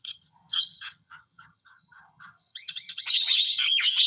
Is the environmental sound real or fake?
fake